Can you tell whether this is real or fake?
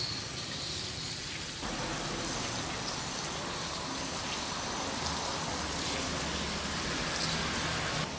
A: real